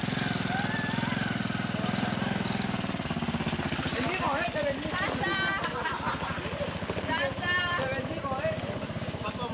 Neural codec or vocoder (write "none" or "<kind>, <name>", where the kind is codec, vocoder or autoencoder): none